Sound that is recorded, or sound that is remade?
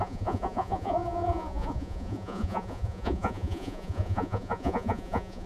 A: remade